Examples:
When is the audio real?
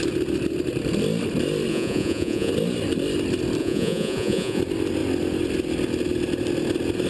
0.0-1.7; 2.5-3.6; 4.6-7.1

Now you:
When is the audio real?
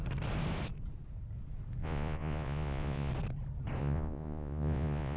0.0-1.8; 3.1-3.8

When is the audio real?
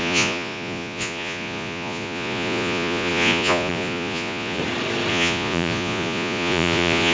4.6-5.1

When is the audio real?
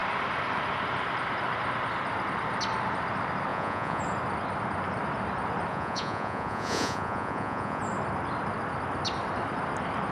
0.0-3.5; 4.0-5.7; 7.8-10.1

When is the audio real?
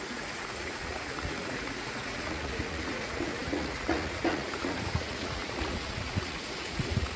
none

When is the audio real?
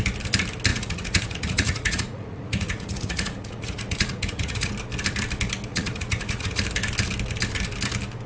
0.0-0.7; 4.7-5.7; 6.6-8.3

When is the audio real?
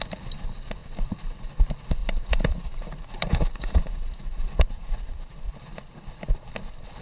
0.0-2.0; 5.5-7.0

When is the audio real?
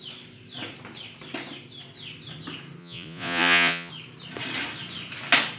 0.0-2.8; 3.9-5.6